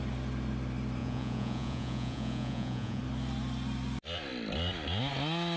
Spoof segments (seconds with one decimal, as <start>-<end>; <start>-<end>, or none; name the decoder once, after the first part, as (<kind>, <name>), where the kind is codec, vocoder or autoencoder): 1.0-3.0 (vocoder, Vocos)